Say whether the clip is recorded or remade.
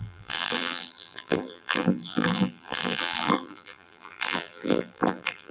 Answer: remade